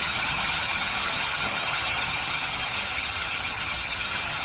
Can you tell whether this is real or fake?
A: fake